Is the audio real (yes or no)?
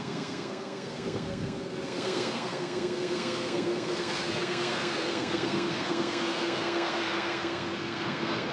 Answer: no